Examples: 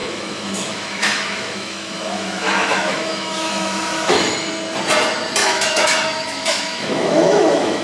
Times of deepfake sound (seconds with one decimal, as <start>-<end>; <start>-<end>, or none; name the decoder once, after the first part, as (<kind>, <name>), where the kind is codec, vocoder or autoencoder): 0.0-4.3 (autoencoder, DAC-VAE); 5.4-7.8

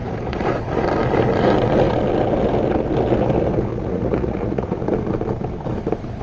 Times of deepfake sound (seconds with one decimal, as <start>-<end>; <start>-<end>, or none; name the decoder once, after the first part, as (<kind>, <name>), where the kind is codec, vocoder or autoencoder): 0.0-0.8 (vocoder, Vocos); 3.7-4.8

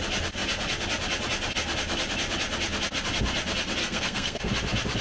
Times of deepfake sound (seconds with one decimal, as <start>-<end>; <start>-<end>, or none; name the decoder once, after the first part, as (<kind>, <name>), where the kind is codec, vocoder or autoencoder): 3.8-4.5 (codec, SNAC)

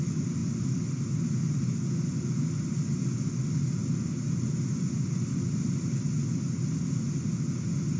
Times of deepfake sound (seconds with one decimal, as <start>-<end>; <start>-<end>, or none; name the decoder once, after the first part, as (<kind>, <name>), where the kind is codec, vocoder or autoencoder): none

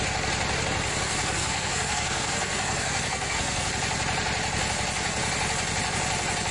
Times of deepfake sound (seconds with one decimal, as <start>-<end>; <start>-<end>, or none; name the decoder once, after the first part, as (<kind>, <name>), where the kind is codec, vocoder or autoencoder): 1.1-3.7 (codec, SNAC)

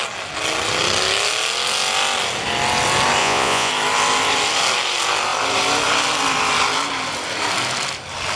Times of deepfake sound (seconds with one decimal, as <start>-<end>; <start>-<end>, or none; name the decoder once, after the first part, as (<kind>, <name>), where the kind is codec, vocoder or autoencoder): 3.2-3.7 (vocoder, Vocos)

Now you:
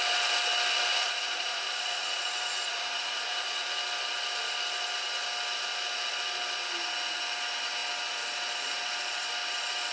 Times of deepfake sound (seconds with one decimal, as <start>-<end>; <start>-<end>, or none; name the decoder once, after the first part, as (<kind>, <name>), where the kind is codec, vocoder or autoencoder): 0.9-3.7 (vocoder, Vocos)

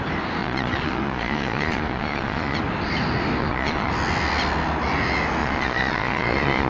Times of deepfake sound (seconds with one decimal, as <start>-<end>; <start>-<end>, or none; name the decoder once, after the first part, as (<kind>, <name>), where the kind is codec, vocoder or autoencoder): 0.4-2.6 (vocoder, Vocos); 3.4-3.9; 5.4-6.7